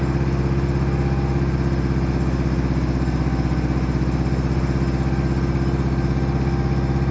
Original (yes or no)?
yes